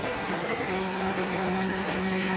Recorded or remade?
remade